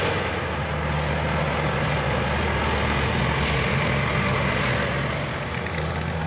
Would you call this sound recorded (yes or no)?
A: yes